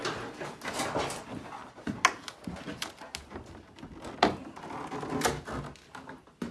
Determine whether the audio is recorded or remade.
recorded